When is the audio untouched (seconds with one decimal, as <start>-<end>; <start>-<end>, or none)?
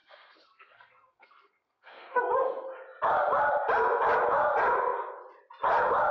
2.2-6.1